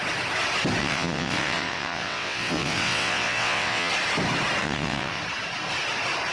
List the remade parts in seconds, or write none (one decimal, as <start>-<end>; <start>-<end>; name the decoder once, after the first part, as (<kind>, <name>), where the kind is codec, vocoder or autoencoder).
0.8-3.9 (vocoder, WaveNeXt); 4.6-5.2